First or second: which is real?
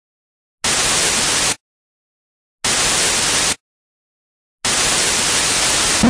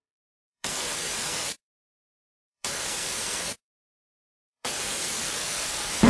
first